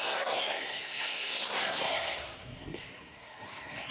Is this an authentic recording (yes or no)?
no